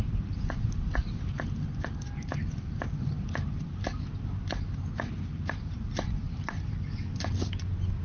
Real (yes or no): yes